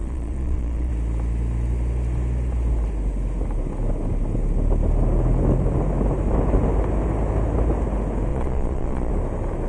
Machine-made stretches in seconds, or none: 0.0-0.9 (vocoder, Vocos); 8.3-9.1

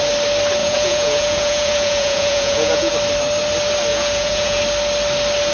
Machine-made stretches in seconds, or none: 0.6-2.9 (vocoder, Vocos); 3.9-4.6

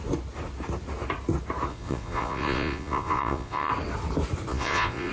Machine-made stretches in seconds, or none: 1.7-3.7 (vocoder, Vocos); 4.5-5.1